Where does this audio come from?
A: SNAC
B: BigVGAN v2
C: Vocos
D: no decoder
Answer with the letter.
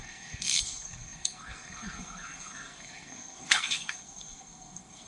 A